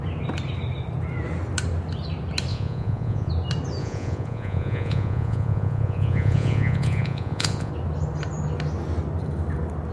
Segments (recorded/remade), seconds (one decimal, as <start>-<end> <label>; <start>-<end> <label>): 0.0-2.5 recorded; 2.5-3.3 remade; 3.3-3.8 recorded; 3.8-7.7 remade; 7.7-9.9 recorded